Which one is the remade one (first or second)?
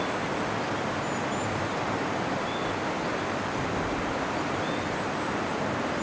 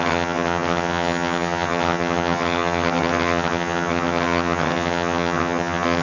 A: second